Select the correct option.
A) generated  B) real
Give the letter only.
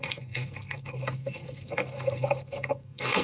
A